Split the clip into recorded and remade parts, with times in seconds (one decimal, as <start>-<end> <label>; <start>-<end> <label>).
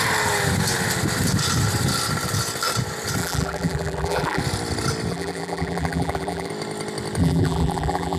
0.0-3.2 recorded; 3.2-4.4 remade; 4.4-5.1 recorded; 5.1-6.5 remade; 6.5-7.2 recorded; 7.2-8.2 remade